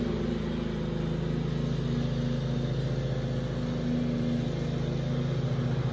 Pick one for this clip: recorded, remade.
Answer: recorded